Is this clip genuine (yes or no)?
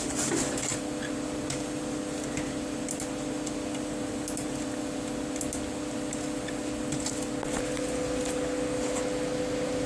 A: yes